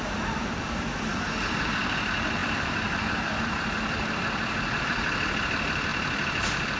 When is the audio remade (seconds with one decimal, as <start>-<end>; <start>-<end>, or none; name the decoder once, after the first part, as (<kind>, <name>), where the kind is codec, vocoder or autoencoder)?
0.0-6.8 (vocoder, BigVGAN v2)

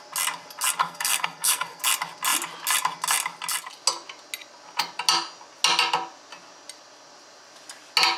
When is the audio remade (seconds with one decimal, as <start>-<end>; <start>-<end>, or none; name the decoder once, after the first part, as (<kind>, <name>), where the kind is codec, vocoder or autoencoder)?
0.8-1.8 (codec, SNAC)

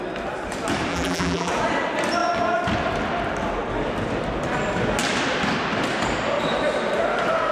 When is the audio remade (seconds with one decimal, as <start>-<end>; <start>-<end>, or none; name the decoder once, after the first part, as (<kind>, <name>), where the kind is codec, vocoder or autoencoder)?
0.9-1.5 (vocoder, BigVGAN v2)

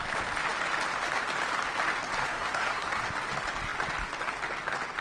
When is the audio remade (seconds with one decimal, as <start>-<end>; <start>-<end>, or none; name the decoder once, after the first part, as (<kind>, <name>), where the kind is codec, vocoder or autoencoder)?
2.2-3.0 (codec, SNAC)

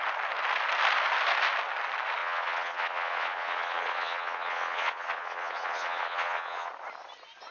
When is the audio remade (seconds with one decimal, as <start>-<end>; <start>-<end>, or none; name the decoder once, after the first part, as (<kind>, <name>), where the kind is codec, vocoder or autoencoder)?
2.2-6.7 (vocoder, Vocos)